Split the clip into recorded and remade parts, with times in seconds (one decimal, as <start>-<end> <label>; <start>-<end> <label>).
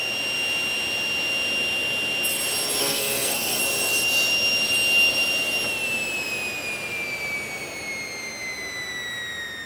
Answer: 0.0-2.8 recorded; 2.8-3.6 remade; 3.6-9.7 recorded